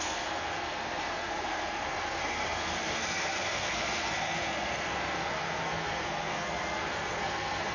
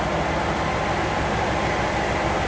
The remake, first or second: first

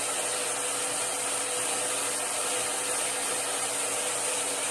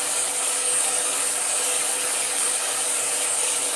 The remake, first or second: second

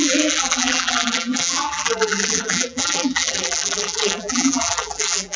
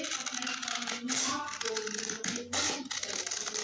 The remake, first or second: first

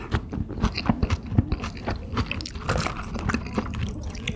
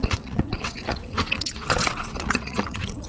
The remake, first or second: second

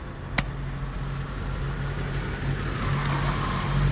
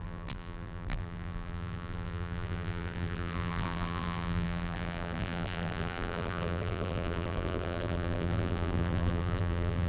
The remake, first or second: second